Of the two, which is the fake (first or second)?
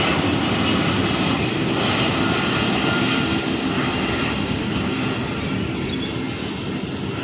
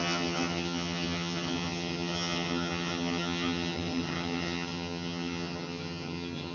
second